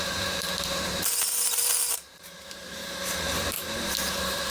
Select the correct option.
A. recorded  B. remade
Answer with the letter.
B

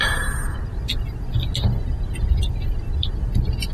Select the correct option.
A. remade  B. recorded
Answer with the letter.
B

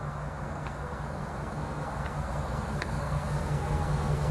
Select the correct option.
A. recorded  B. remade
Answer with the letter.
B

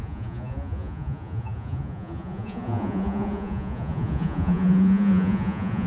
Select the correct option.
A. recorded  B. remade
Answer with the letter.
B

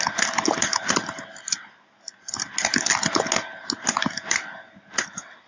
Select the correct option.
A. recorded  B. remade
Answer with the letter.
A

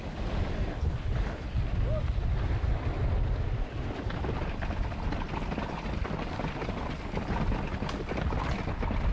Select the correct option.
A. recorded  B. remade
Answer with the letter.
A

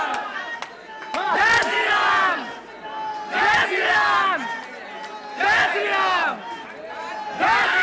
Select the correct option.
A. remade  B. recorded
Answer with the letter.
B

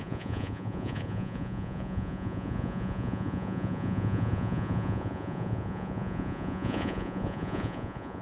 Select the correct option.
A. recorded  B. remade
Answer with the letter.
B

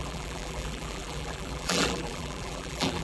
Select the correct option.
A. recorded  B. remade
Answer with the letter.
B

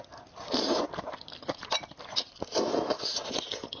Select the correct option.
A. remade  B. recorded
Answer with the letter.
A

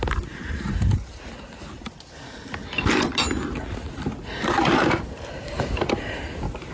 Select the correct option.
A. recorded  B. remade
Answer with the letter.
A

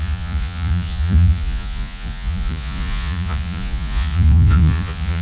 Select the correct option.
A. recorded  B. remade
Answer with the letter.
B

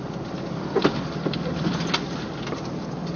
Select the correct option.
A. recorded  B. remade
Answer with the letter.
B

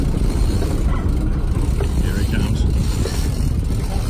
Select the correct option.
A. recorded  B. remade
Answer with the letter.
A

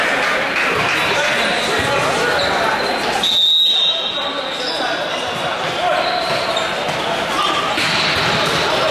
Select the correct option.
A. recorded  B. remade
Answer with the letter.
A